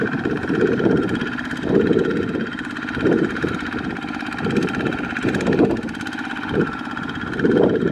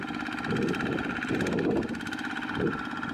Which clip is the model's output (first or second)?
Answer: first